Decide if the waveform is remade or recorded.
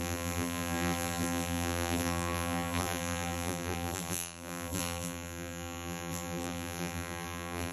remade